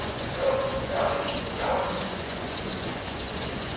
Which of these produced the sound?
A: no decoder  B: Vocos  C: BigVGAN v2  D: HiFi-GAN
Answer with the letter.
B